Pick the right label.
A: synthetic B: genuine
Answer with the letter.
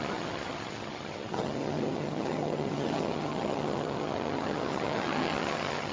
A